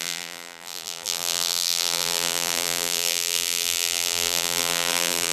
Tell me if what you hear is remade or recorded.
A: remade